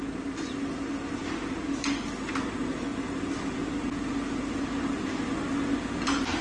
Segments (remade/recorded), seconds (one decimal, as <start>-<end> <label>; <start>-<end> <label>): 0.0-6.4 recorded